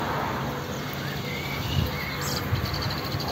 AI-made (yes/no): no